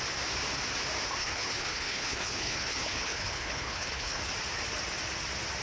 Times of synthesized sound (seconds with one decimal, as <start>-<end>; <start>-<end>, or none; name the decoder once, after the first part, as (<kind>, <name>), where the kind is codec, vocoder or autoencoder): 1.2-4.2 (codec, HILCodec)

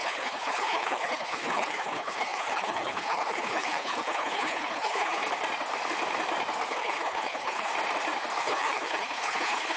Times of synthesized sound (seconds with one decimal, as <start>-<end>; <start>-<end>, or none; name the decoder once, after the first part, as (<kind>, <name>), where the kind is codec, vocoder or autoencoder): 0.0-5.2 (codec, HILCodec); 6.7-7.7; 8.4-9.8

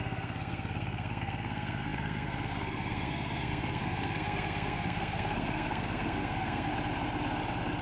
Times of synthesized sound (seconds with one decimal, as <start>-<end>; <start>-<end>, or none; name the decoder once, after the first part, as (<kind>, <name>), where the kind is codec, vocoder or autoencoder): 0.0-6.7 (codec, SNAC)